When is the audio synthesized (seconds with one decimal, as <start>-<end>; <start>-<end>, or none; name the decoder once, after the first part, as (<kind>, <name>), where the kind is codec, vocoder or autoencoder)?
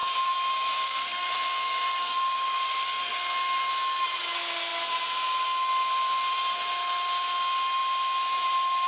0.0-3.7 (codec, DAC)